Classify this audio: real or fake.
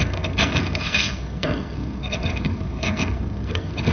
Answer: fake